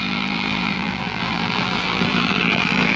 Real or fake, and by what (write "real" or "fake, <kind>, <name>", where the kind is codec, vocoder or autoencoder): fake, vocoder, BigVGAN v2